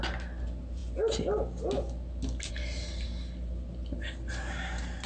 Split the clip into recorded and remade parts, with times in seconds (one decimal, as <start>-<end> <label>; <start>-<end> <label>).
0.0-5.1 recorded